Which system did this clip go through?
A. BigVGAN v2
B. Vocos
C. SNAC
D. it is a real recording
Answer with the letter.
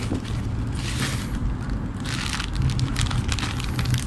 D